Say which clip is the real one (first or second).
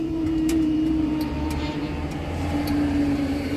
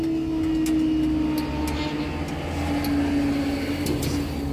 second